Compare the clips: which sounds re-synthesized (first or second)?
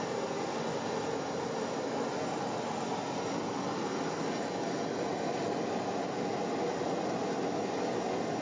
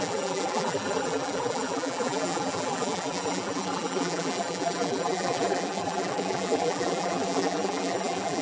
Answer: second